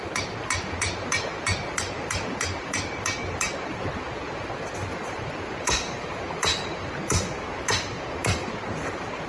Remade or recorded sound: remade